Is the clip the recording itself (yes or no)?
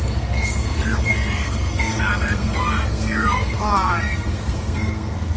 no